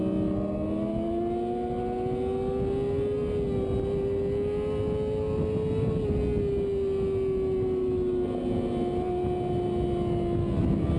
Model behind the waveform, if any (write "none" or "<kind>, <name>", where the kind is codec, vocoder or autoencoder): none